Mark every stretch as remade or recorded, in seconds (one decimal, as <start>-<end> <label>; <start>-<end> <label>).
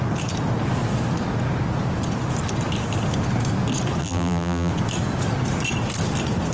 0.0-4.0 recorded; 4.0-4.7 remade; 4.7-6.5 recorded